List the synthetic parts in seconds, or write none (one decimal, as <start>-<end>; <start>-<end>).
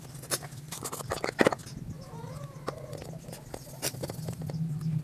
none